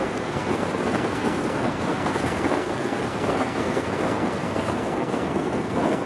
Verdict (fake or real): fake